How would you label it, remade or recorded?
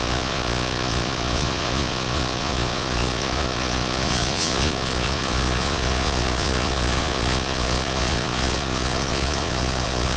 remade